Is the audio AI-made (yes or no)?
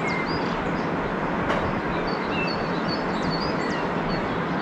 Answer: no